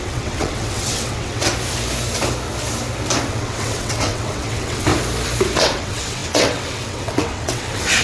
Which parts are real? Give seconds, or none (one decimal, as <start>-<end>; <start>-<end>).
1.5-3.3; 4.9-5.6